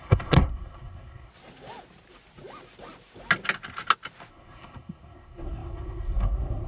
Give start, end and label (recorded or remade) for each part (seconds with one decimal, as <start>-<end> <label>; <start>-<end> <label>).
0.0-1.3 remade; 1.3-4.3 recorded; 4.3-6.7 remade